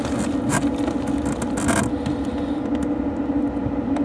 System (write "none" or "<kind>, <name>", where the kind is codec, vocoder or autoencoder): none